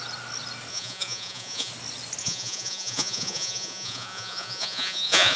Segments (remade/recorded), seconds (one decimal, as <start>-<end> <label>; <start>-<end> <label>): 0.0-0.7 recorded; 0.7-1.7 remade; 1.7-2.2 recorded; 2.2-5.4 remade